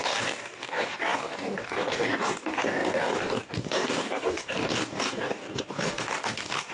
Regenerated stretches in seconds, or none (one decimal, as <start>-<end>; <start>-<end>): 0.0-6.7

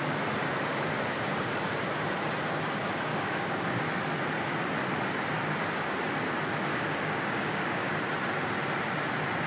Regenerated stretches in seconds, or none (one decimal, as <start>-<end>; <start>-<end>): 3.1-3.8; 6.7-8.0

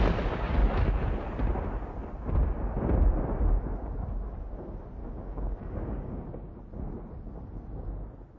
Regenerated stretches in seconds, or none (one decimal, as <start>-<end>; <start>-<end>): 5.0-6.6